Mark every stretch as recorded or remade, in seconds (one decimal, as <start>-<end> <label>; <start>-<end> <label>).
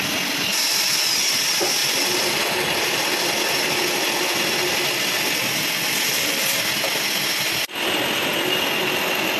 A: 0.0-9.4 recorded